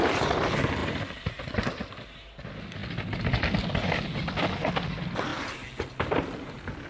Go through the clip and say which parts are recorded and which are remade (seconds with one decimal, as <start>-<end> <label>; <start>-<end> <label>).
0.0-5.3 recorded; 5.3-5.8 remade; 5.8-6.9 recorded